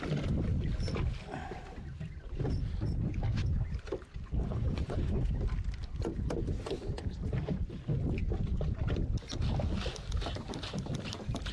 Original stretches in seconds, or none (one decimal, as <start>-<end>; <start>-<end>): 0.0-4.5; 5.3-11.5